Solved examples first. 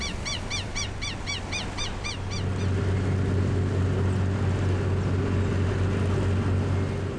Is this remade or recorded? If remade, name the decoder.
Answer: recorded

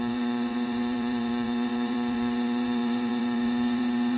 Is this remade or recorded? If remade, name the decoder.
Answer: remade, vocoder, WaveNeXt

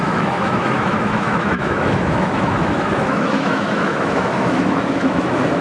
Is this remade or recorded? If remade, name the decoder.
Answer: remade, autoencoder, DAC-VAE